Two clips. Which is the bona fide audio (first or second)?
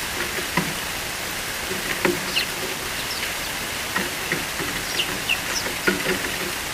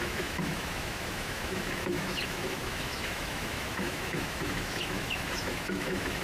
first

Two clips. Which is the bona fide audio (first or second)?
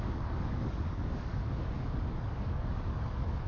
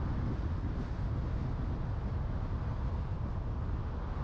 second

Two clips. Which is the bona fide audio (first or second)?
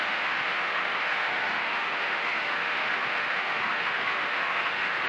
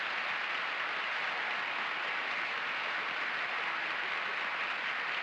second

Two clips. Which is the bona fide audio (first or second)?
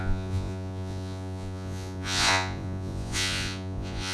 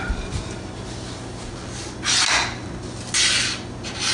second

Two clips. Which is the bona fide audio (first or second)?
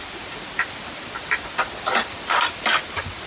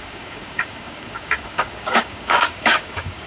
first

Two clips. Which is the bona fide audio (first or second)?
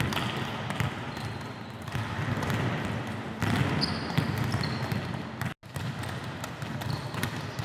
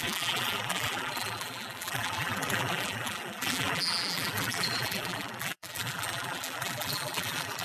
first